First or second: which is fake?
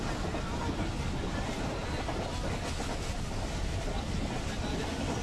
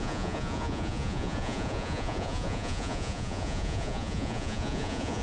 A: second